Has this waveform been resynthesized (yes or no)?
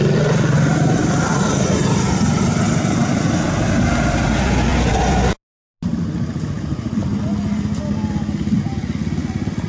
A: no